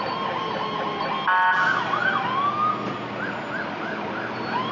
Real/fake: real